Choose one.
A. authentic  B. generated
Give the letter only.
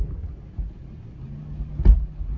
A